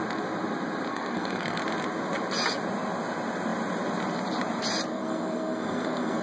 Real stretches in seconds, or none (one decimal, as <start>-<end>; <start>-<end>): 0.0-0.9; 1.6-4.9